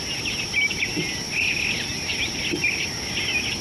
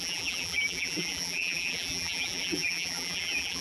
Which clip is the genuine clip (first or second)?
first